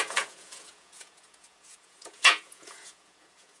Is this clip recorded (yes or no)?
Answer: no